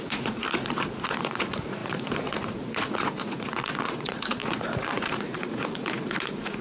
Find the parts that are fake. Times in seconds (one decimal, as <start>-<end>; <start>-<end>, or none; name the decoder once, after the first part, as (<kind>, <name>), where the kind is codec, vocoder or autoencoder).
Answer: 0.0-6.6 (vocoder, Vocos)